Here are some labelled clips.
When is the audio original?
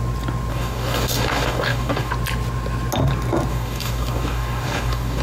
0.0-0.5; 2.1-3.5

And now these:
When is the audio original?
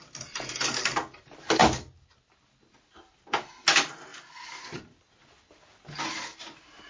0.0-6.9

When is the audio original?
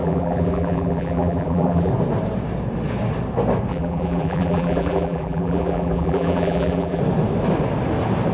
1.9-3.7; 7.0-8.3